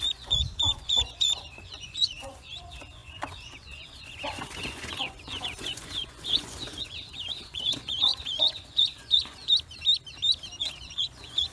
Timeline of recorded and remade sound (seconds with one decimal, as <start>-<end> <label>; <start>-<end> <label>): 0.0-9.5 remade; 9.5-10.6 recorded; 10.6-11.5 remade